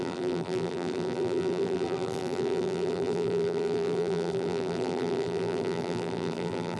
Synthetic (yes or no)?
yes